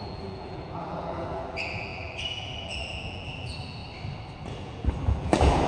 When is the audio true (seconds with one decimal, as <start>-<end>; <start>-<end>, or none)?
3.8-4.6